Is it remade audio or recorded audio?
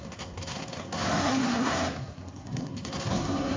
remade